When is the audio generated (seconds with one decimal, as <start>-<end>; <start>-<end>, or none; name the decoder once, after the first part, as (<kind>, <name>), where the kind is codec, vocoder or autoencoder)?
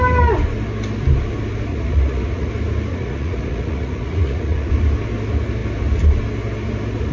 1.7-2.5 (vocoder, Vocos); 2.9-4.7